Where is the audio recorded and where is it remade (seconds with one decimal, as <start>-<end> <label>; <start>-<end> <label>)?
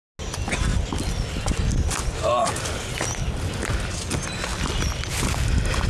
0.0-5.9 recorded